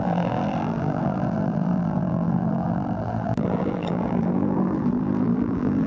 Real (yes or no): no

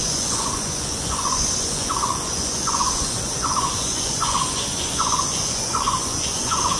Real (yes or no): no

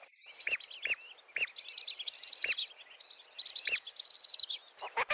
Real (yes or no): yes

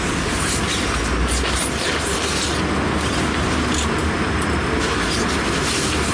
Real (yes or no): yes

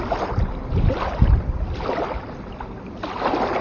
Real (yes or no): yes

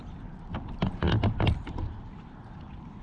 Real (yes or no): yes